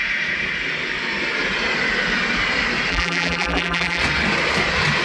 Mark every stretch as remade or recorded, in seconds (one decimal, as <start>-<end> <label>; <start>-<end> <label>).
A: 0.0-2.9 recorded; 2.9-4.0 remade; 4.0-5.0 recorded